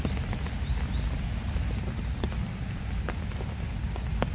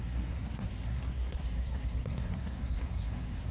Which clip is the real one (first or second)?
first